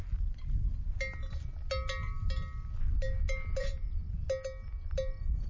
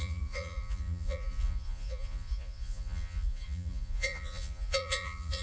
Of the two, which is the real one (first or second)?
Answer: first